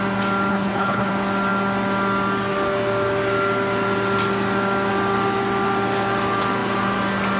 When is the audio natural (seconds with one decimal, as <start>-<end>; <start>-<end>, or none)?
0.0-0.5; 1.1-7.4